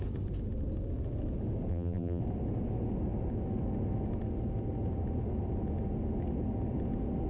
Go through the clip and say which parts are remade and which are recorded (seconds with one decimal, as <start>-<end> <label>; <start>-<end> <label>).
0.0-1.7 recorded; 1.7-2.2 remade; 2.2-7.3 recorded